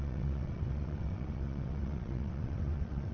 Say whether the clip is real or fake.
fake